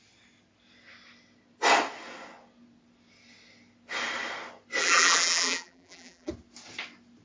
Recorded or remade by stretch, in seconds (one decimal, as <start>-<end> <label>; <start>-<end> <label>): 0.0-4.8 recorded; 4.8-6.3 remade; 6.3-7.2 recorded